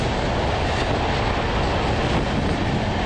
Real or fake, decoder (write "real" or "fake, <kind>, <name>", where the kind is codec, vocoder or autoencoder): real